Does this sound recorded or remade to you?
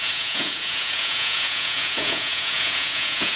remade